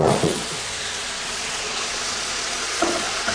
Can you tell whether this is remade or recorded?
remade